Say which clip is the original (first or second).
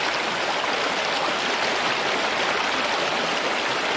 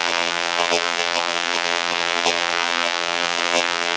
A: first